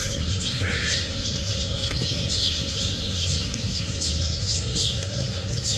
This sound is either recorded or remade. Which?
remade